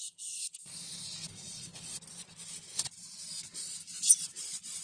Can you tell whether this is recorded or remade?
recorded